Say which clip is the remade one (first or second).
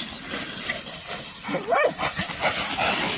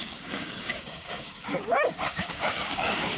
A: second